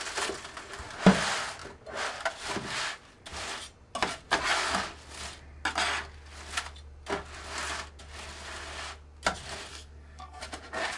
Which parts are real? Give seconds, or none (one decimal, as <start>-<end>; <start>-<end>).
0.0-9.7; 10.4-11.0